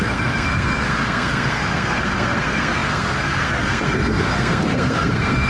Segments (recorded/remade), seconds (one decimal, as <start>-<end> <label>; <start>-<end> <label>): 0.0-5.5 remade